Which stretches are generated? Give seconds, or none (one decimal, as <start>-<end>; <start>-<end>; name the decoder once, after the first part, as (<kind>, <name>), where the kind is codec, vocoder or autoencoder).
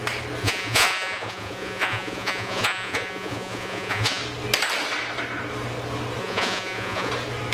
0.4-4.2 (vocoder, Vocos); 6.2-7.1